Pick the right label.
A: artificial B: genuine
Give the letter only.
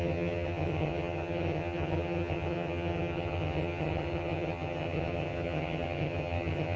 A